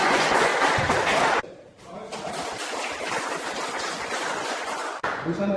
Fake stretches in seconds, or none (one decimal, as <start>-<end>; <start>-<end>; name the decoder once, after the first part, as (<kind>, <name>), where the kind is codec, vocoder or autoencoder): 0.0-0.5 (vocoder, Vocos); 3.9-5.6